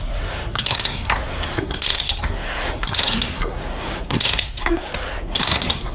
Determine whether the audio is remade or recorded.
remade